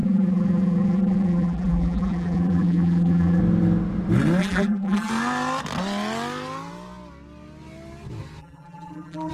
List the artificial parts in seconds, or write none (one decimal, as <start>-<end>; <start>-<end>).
0.0-3.4; 4.4-5.1; 8.4-9.3